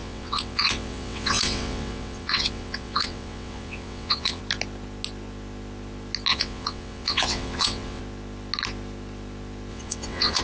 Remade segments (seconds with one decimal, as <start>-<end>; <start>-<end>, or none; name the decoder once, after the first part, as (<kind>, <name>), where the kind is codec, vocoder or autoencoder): 0.0-4.4 (vocoder, WaveNeXt); 6.3-8.0; 9.7-10.4